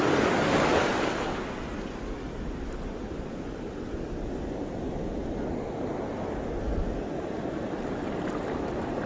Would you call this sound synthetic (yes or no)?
no